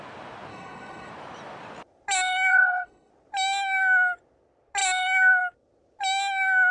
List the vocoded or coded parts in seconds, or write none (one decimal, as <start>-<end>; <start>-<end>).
0.5-1.1; 2.5-3.1